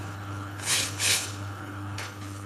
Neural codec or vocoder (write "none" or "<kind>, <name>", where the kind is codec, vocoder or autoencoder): codec, HILCodec